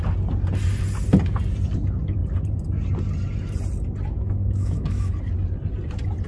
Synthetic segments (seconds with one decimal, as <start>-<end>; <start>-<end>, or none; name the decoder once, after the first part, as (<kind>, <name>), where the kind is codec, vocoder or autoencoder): 4.1-5.1 (autoencoder, DAC-VAE)